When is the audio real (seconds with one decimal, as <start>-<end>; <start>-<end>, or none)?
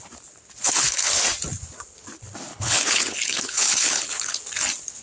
0.0-0.6; 1.2-2.5; 4.4-5.0